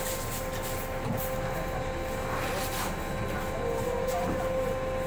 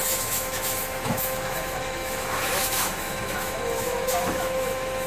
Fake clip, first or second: second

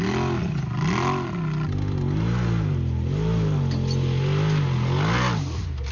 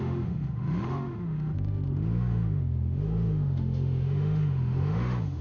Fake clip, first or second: second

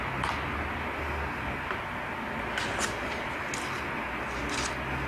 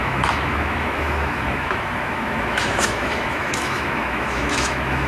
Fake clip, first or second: second